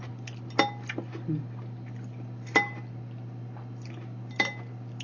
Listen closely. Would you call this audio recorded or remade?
recorded